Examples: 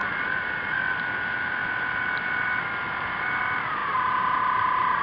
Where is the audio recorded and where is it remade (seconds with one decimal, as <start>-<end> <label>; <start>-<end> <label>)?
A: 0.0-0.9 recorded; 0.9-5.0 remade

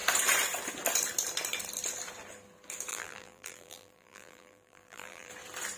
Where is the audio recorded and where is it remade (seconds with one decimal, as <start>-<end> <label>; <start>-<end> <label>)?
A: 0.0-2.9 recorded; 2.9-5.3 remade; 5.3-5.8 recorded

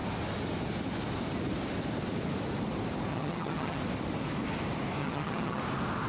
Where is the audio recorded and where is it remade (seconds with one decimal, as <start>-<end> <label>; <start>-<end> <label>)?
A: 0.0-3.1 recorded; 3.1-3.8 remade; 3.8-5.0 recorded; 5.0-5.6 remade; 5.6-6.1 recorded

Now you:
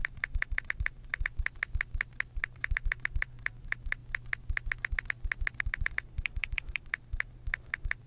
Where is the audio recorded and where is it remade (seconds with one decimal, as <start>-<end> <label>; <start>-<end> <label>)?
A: 0.0-1.3 remade; 1.3-2.4 recorded; 2.4-4.0 remade; 4.0-5.6 recorded; 5.6-8.1 remade